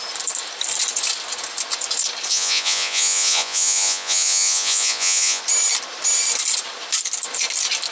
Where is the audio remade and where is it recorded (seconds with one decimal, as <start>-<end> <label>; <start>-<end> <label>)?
0.0-2.3 recorded; 2.3-5.4 remade; 5.4-7.9 recorded